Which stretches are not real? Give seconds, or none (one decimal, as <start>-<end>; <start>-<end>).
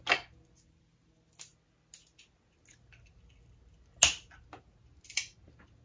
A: none